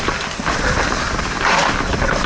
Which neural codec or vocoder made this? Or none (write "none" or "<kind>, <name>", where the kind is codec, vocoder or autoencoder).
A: none